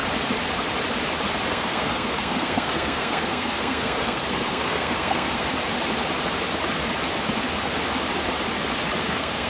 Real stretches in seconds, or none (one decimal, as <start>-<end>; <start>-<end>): 0.0-1.5; 5.5-9.0